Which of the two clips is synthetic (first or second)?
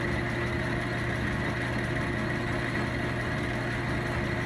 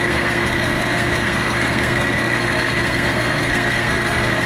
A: second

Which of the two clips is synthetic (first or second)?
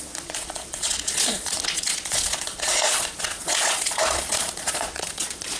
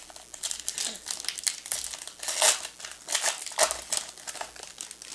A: first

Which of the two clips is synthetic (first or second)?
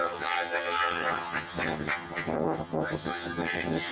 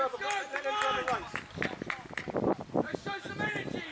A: first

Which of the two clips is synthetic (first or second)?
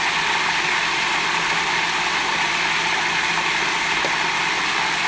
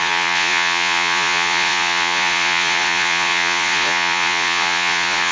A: second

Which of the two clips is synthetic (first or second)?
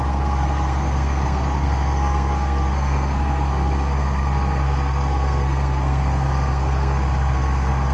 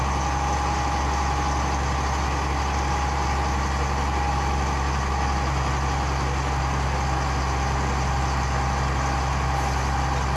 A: first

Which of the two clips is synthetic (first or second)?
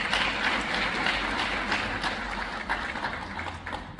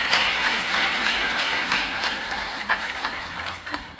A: second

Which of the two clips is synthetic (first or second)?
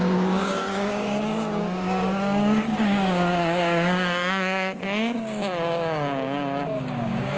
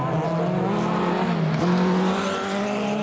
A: first